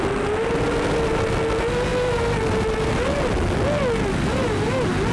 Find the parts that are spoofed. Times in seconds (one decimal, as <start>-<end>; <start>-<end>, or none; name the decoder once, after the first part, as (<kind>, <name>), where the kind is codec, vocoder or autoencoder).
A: none